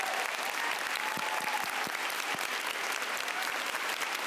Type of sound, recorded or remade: recorded